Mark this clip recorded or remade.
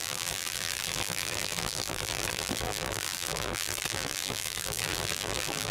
remade